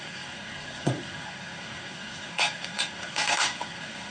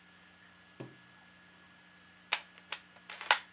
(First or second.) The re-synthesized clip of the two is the first